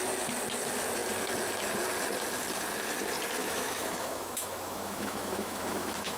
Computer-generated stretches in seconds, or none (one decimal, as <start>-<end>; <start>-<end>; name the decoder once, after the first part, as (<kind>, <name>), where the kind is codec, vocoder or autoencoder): 3.4-6.2 (autoencoder, DAC-VAE)